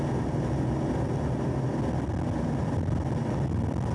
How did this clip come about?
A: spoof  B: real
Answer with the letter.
B